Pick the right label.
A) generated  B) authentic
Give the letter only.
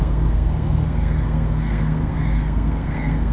A